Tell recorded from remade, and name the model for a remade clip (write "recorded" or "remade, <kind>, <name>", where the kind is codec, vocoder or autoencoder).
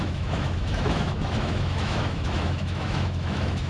remade, autoencoder, DAC-VAE